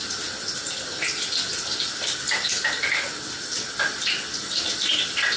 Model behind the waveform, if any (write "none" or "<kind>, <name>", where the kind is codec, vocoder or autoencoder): none